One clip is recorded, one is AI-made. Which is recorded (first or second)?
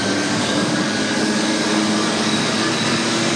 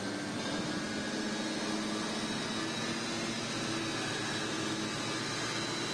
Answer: second